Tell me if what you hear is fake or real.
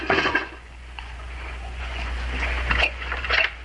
fake